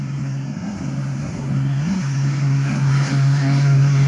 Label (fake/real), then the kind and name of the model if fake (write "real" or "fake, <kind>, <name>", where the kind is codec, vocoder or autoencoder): fake, codec, SNAC